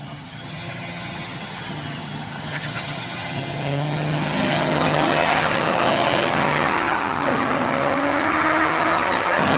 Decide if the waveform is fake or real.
fake